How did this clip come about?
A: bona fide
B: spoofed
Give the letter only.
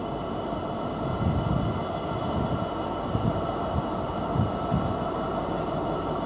A